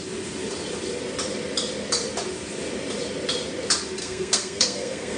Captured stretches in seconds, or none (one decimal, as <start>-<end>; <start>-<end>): 0.0-4.0